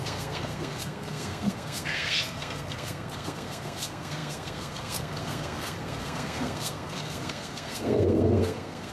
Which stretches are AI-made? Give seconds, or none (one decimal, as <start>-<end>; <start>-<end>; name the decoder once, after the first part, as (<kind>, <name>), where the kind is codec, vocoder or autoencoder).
0.0-8.9 (codec, SNAC)